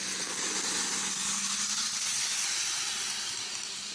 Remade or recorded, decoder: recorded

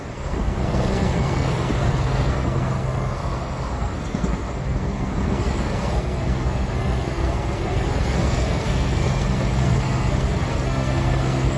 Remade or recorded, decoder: remade, codec, SNAC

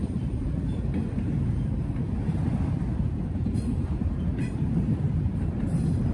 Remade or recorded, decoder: remade, vocoder, BigVGAN v2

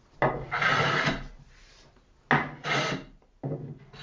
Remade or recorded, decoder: recorded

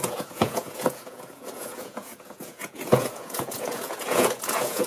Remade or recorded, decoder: remade, vocoder, Vocos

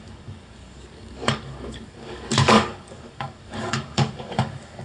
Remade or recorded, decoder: remade, codec, DAC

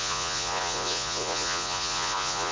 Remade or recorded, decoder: remade, vocoder, Vocos